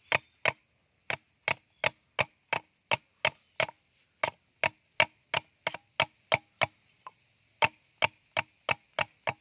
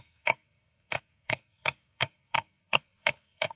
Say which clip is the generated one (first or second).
second